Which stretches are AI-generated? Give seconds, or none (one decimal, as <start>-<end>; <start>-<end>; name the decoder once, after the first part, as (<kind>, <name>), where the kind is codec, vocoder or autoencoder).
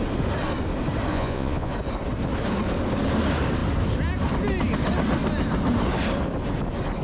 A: 1.1-1.7 (vocoder, Vocos)